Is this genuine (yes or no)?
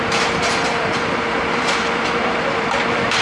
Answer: no